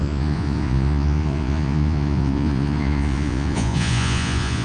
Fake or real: fake